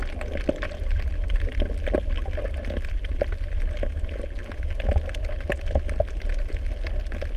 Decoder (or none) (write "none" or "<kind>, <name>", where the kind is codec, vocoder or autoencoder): none